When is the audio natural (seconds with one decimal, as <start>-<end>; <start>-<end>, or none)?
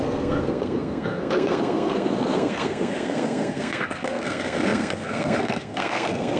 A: none